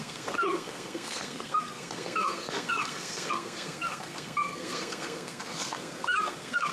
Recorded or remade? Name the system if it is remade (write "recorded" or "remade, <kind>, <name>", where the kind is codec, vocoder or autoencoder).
remade, codec, SNAC